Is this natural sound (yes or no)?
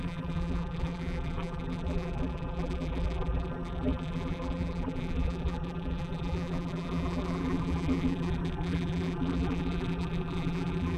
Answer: no